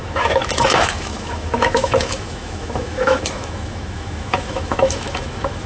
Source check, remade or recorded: remade